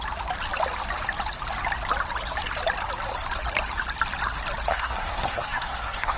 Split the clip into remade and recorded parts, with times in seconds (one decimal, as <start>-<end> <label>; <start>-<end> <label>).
0.0-4.7 recorded; 4.7-6.2 remade